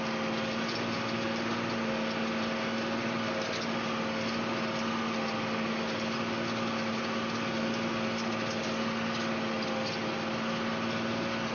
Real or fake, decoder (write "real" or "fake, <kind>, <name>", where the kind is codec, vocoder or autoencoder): real